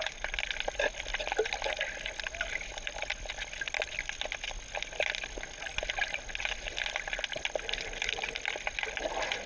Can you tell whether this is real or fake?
real